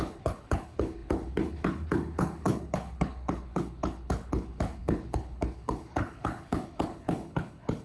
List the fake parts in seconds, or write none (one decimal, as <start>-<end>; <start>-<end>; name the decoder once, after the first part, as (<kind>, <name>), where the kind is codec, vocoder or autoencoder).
0.0-7.8 (codec, HILCodec)

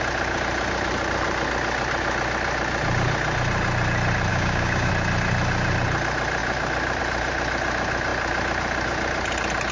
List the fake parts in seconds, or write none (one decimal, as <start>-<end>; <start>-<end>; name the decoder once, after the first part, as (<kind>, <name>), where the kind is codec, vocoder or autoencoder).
4.3-4.9 (codec, DAC)

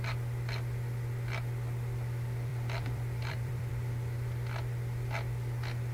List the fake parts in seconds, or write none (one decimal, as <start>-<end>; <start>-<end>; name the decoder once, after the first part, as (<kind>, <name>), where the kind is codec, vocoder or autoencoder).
2.5-3.7 (vocoder, BigVGAN v2)